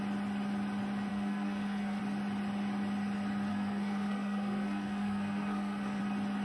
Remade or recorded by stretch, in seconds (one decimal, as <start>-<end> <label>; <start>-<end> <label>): 0.0-1.1 recorded; 1.1-2.0 remade; 2.0-3.5 recorded; 3.5-6.0 remade; 6.0-6.4 recorded